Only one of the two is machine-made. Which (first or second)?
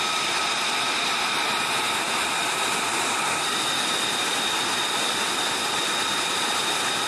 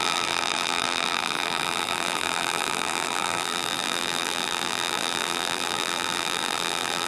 second